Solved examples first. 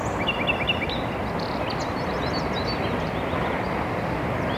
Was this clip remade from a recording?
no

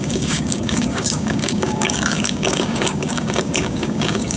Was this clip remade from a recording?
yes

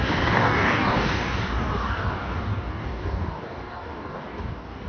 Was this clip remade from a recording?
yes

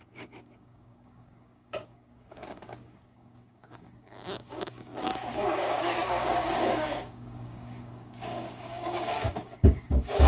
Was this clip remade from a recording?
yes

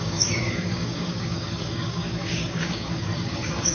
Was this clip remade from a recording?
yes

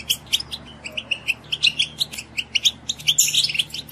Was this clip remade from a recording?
no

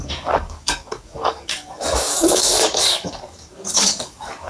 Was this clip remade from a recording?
yes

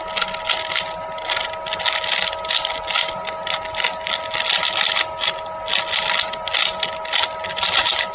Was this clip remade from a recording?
no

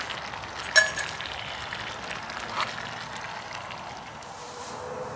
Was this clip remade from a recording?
no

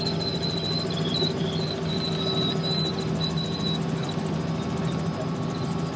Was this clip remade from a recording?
no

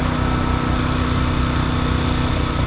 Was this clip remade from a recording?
no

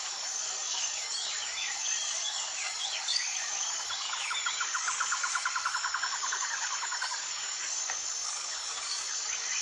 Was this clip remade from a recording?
yes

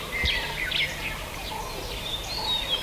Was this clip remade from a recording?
no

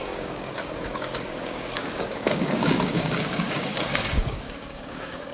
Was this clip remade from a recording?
yes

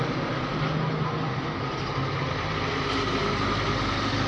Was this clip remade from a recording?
no